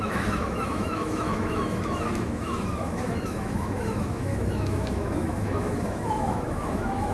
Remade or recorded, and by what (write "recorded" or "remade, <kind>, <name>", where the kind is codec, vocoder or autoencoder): remade, autoencoder, DAC-VAE